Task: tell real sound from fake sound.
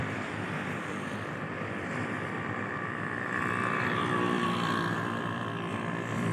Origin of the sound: fake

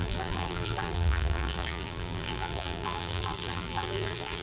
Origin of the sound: fake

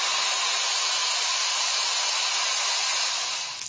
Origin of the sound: real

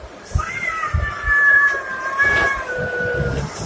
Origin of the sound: fake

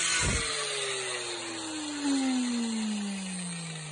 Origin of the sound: real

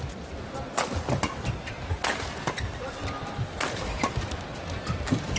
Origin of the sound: real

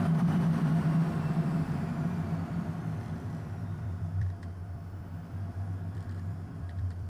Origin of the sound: fake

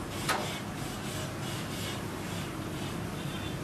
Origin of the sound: real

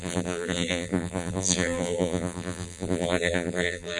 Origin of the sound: fake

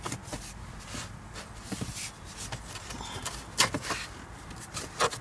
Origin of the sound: real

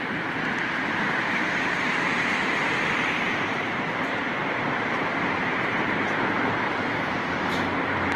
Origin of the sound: fake